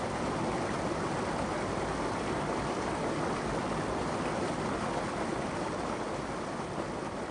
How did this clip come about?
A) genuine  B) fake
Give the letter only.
A